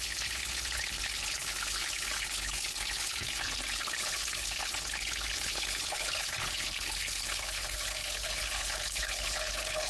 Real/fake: fake